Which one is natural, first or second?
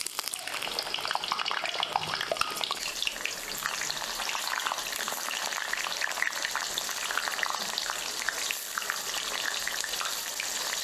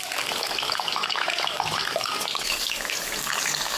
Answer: first